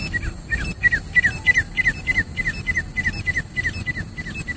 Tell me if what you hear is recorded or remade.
recorded